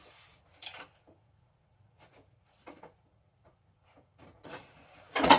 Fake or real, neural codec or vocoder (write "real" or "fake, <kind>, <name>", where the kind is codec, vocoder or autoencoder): fake, vocoder, Vocos